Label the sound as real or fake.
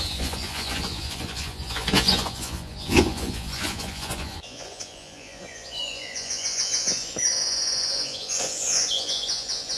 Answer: fake